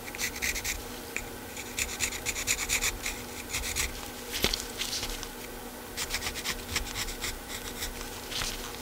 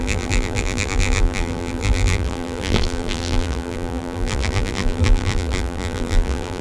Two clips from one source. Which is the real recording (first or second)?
first